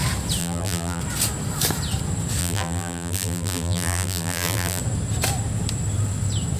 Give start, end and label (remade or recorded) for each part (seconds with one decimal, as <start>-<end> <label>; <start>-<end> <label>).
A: 0.0-0.4 recorded; 0.4-1.0 remade; 1.0-2.4 recorded; 2.4-4.8 remade; 4.8-6.6 recorded